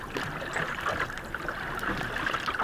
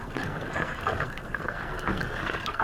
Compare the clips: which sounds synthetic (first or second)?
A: second